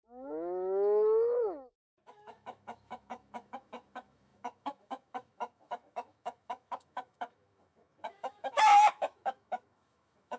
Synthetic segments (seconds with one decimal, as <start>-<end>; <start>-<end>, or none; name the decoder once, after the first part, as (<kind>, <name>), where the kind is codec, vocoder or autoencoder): 0.0-10.4 (autoencoder, DAC-VAE)